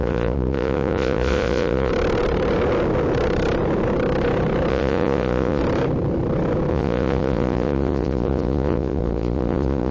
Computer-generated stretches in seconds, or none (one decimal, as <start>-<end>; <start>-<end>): 0.0-1.9; 4.7-5.6; 6.7-9.9